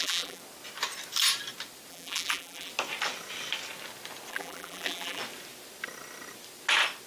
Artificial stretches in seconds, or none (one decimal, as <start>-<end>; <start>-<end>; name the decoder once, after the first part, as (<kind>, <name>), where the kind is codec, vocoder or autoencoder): 0.0-0.4 (vocoder, BigVGAN v2); 1.9-2.7; 4.3-5.2